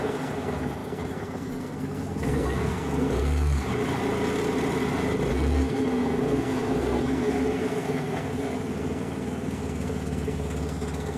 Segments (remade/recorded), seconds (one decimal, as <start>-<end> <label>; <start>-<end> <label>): 0.0-3.7 remade; 3.7-5.3 recorded; 5.3-11.2 remade